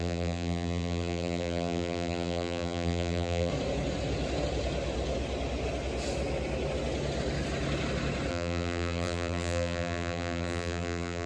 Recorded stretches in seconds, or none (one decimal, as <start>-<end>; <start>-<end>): 3.5-8.3